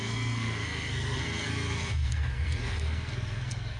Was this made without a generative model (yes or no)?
no